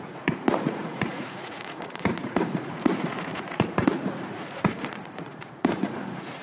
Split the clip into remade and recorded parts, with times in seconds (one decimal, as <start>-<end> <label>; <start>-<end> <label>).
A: 0.0-6.4 remade